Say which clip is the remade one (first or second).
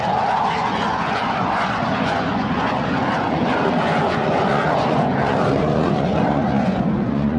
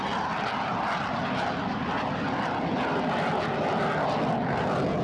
first